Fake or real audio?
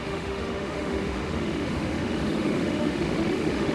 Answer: fake